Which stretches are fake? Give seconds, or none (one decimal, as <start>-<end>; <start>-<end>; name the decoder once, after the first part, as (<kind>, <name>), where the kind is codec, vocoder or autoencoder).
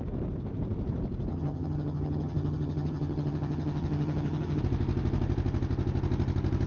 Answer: 1.3-4.6 (vocoder, HiFi-GAN)